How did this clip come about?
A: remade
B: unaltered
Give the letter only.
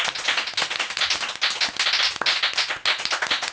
B